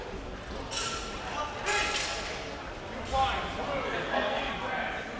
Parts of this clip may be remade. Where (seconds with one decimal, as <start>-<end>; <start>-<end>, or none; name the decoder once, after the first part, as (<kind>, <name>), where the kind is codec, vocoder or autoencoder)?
4.0-4.5 (codec, SNAC)